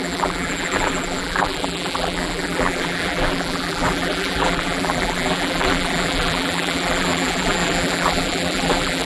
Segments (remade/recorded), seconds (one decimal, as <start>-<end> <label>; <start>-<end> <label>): 0.0-9.0 remade